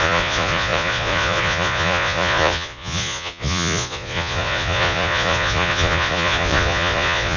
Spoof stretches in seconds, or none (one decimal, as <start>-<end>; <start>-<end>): 0.0-7.4